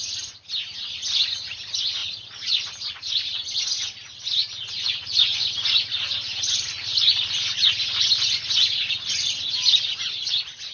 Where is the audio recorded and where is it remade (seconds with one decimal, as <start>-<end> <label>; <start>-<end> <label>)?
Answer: 0.0-10.7 recorded